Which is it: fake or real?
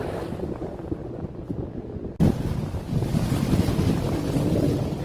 real